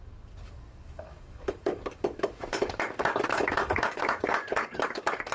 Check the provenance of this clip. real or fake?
fake